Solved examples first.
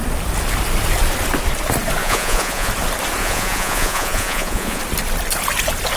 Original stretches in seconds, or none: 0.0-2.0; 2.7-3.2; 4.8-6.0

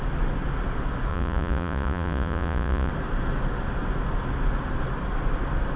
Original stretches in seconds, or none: 0.0-1.1; 2.9-5.8

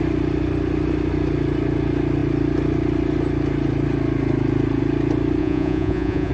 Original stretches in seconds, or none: 0.0-5.4

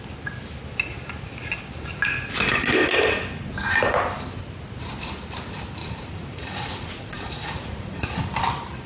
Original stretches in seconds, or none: 0.0-5.8; 8.2-8.9